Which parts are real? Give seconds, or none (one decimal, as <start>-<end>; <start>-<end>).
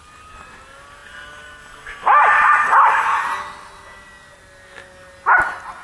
0.0-5.8